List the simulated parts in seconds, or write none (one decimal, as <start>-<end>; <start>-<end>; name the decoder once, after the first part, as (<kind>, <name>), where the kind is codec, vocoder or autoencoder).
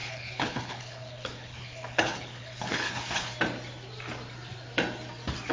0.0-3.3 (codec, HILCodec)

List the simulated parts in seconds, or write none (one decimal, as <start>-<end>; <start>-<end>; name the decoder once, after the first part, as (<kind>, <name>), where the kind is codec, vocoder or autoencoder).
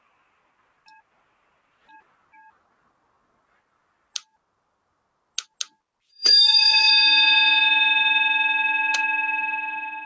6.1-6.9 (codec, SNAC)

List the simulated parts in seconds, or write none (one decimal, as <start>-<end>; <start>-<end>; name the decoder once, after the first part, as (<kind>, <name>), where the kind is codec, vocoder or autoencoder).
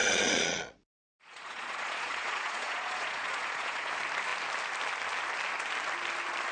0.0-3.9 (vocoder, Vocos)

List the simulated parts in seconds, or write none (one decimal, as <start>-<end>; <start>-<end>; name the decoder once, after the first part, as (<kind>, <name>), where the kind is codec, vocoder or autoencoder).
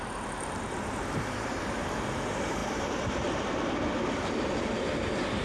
0.0-5.4 (vocoder, BigVGAN v2)